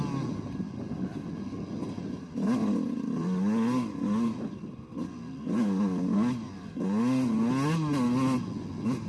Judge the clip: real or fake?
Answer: real